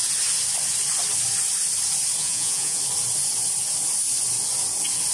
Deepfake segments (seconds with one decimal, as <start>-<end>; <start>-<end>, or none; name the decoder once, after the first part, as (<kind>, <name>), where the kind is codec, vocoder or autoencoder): 2.2-2.8 (vocoder, Vocos)